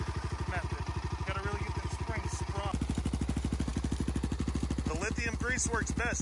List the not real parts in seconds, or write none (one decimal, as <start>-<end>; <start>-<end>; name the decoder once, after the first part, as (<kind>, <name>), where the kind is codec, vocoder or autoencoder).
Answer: none